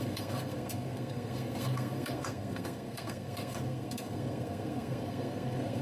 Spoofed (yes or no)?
yes